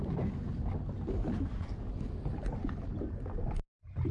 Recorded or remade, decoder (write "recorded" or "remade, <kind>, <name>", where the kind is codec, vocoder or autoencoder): recorded